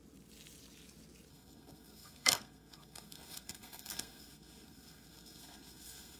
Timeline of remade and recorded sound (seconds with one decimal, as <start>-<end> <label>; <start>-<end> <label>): 0.0-1.3 recorded; 1.3-6.2 remade